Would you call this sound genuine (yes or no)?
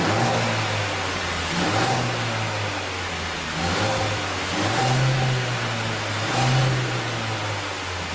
yes